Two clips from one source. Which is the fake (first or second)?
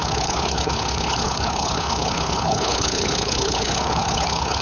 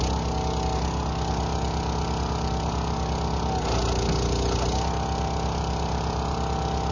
first